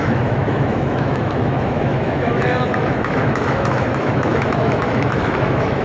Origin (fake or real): fake